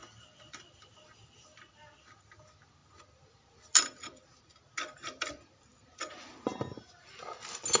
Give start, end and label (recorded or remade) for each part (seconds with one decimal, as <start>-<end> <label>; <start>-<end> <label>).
0.0-0.9 remade; 0.9-2.8 recorded; 2.8-4.4 remade; 4.4-5.7 recorded; 5.7-7.2 remade; 7.2-7.8 recorded